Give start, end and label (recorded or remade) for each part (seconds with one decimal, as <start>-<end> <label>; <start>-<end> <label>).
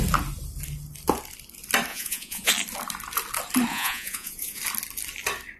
0.0-1.9 recorded; 1.9-2.5 remade; 2.5-3.7 recorded; 3.7-4.6 remade; 4.6-5.6 recorded